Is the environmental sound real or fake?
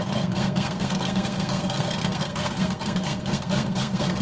fake